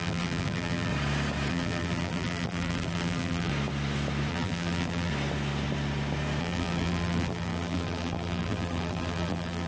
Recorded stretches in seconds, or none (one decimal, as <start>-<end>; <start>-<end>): 0.9-1.5; 3.5-4.3; 5.1-6.4